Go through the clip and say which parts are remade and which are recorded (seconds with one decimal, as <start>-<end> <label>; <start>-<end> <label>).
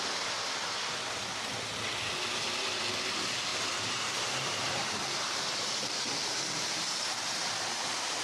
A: 0.0-3.5 recorded; 3.5-8.2 remade